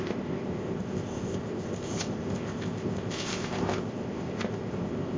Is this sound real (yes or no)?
no